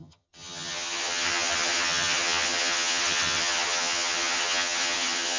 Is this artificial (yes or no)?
yes